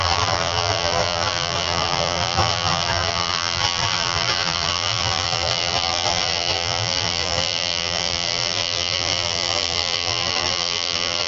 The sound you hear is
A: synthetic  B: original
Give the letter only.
A